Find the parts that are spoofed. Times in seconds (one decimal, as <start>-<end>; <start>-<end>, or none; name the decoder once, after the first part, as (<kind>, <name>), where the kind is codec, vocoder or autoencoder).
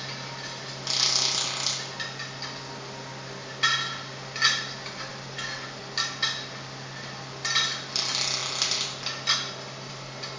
5.1-5.8 (vocoder, BigVGAN v2); 8.4-9.9